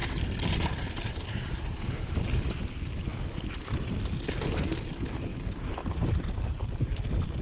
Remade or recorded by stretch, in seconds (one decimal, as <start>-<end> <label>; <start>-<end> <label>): 0.0-3.1 recorded; 3.1-4.1 remade; 4.1-5.3 recorded; 5.3-6.3 remade; 6.3-7.4 recorded